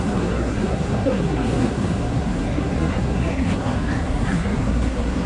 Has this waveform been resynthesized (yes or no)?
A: yes